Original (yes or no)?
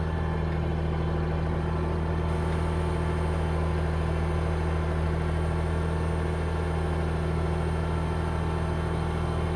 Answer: yes